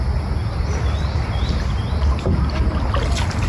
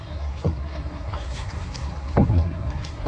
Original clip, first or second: first